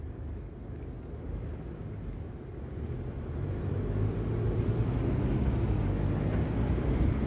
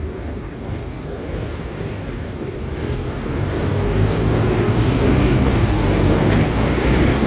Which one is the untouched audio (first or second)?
first